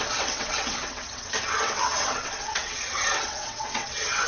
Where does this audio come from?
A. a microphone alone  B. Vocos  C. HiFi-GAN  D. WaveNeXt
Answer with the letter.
D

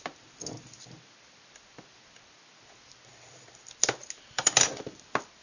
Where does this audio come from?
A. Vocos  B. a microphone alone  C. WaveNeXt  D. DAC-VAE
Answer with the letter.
B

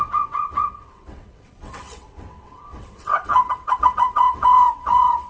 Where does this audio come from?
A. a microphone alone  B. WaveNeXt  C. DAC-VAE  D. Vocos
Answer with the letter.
B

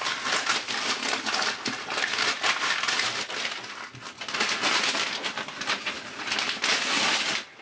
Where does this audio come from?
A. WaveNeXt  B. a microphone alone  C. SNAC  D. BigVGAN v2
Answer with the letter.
B